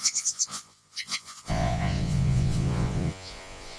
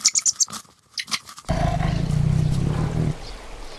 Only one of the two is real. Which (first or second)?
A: second